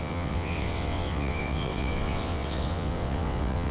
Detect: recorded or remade remade